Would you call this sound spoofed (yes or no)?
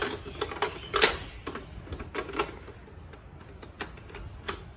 no